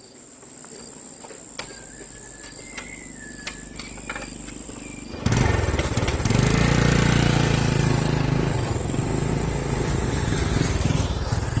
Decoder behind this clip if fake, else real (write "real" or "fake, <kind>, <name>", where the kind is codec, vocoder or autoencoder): real